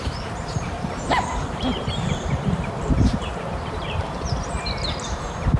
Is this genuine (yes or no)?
no